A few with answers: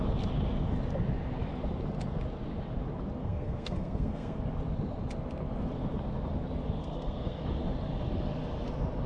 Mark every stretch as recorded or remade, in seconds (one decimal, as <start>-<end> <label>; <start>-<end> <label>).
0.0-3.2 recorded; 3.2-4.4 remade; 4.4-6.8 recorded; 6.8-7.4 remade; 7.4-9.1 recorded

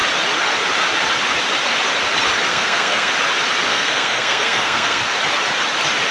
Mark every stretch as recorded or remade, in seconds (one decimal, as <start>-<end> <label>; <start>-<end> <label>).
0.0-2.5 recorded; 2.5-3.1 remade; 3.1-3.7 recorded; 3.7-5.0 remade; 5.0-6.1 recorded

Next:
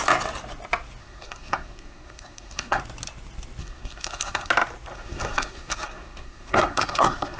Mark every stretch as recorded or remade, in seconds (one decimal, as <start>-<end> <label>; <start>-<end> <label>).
0.0-1.0 recorded; 1.0-2.8 remade; 2.8-3.6 recorded; 3.6-4.5 remade; 4.5-4.9 recorded; 4.9-7.4 remade